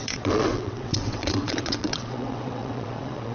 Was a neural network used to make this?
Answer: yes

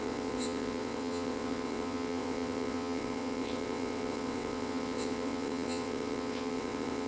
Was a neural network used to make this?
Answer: yes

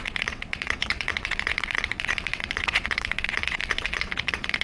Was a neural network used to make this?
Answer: yes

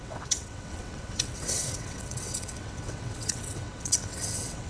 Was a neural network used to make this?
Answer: yes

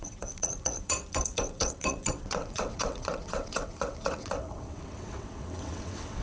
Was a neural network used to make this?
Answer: yes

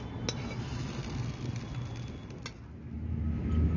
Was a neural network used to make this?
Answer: no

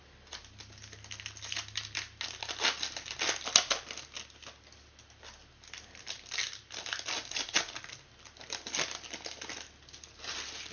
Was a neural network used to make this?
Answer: no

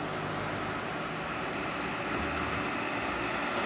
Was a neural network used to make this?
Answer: no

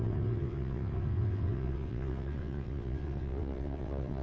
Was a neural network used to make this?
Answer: yes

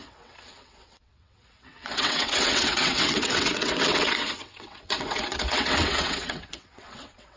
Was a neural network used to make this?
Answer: yes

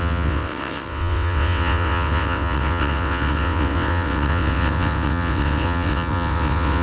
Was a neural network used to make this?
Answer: yes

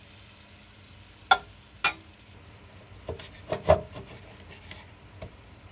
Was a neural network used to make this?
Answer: no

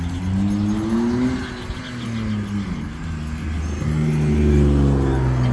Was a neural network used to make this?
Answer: no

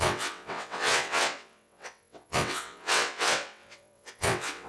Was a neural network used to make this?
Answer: yes